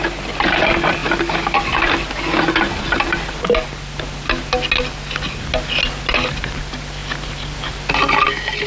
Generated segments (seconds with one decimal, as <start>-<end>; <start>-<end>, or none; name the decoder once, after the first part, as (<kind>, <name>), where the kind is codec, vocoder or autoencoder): none